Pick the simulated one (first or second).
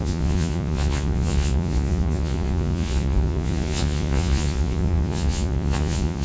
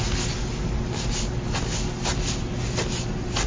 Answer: first